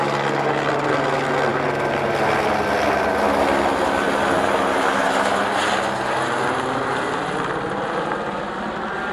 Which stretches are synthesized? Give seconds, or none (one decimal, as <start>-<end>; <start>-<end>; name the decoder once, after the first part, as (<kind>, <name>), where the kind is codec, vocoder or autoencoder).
none